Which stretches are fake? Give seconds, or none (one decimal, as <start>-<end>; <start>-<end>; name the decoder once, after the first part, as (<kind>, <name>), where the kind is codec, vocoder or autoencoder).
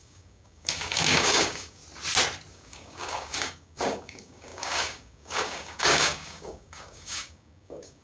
0.0-1.8 (codec, DAC); 2.5-8.0